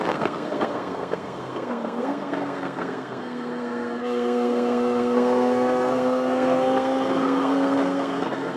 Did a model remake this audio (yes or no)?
yes